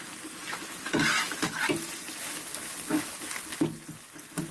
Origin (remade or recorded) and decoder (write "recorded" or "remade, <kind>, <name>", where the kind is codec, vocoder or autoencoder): recorded